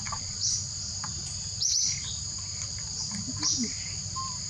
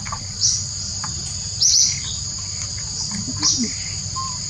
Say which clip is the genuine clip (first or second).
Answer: second